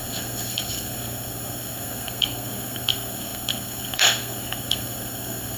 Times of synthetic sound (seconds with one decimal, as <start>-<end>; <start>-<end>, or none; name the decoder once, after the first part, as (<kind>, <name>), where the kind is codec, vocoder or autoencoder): 0.0-5.6 (codec, SNAC)